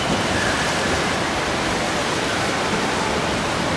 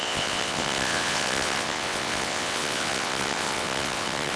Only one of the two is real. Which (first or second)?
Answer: first